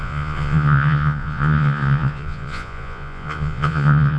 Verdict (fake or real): fake